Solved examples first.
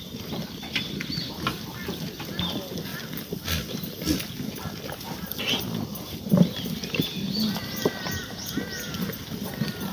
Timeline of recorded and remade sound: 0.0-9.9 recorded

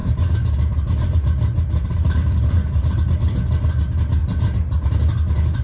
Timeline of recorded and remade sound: 0.0-3.1 remade; 3.1-4.2 recorded; 4.2-5.0 remade; 5.0-5.6 recorded